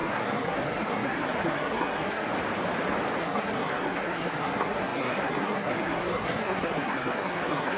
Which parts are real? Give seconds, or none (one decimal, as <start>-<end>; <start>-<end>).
2.3-3.2